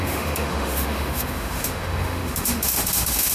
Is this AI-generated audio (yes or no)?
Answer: yes